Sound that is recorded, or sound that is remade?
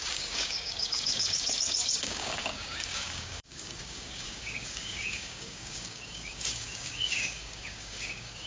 remade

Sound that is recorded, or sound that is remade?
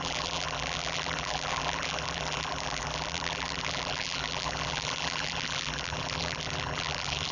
remade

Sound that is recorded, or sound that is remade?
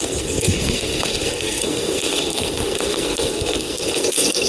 remade